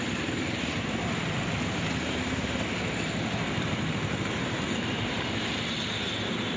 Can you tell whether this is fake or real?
real